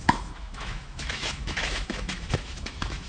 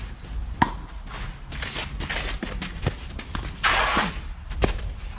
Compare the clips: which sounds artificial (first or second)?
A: first